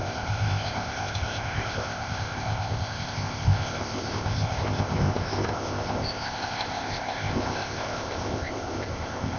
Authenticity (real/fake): fake